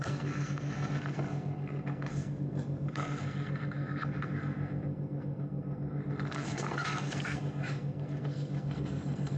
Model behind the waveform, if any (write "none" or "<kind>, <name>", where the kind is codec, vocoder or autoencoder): codec, SNAC